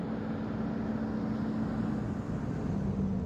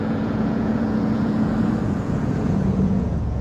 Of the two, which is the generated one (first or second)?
second